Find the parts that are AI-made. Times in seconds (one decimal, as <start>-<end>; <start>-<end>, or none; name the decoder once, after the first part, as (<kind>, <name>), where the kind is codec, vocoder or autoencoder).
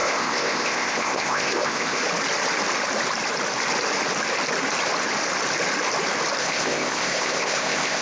0.0-2.0 (codec, ZipCodec); 6.4-8.0